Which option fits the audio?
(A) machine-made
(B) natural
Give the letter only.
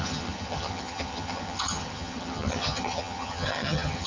A